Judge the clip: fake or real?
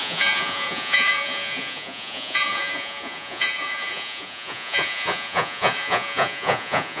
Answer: fake